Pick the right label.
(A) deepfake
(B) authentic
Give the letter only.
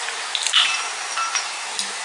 B